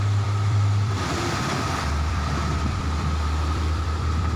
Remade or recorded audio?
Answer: remade